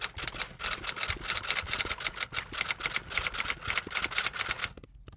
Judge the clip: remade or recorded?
recorded